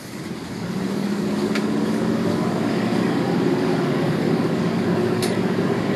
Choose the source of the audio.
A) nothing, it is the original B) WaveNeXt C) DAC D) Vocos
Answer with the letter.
C